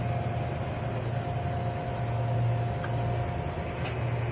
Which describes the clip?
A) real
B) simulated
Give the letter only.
A